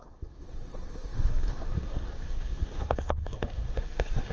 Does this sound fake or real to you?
fake